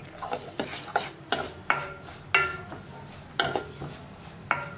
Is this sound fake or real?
real